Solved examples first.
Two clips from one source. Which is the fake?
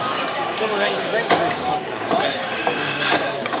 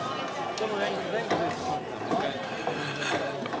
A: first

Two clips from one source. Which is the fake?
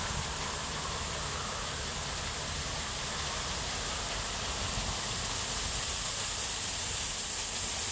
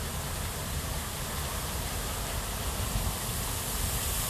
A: second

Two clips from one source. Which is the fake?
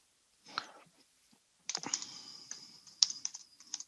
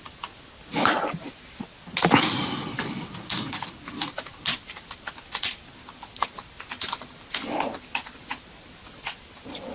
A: first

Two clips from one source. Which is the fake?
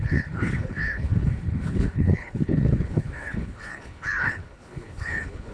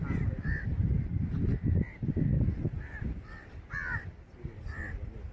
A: first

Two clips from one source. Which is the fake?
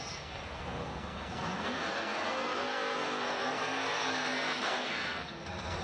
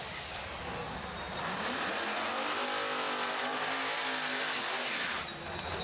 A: first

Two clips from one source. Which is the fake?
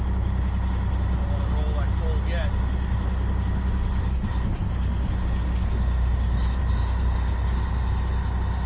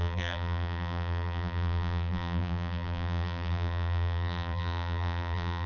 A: second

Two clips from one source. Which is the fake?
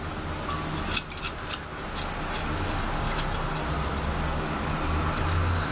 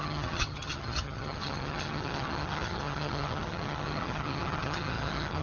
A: second